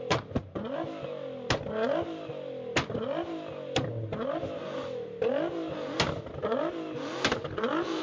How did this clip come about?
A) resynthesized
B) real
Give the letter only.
B